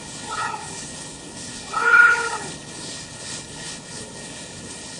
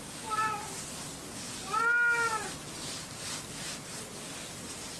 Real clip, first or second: second